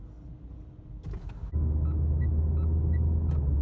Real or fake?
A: real